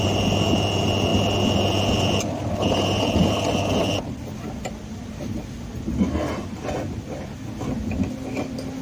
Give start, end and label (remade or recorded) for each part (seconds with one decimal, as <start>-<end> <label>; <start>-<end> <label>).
0.0-8.8 recorded